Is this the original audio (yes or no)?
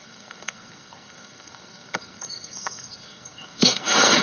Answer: no